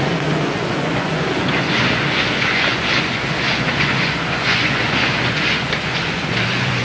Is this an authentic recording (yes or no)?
no